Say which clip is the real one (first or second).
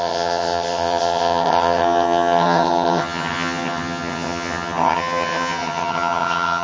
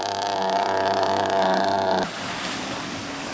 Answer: second